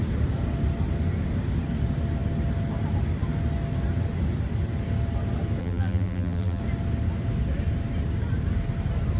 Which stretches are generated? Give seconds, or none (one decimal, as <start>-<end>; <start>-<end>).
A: 5.6-6.6